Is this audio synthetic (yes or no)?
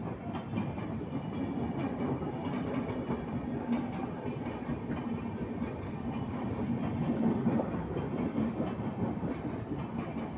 no